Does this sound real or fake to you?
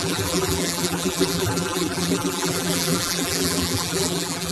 fake